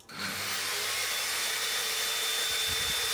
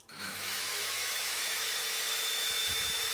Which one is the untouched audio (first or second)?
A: first